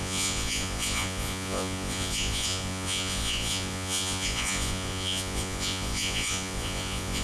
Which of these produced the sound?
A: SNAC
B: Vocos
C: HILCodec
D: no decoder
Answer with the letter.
B